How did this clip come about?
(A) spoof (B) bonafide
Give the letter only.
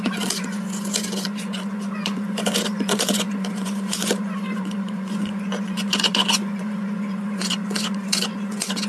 A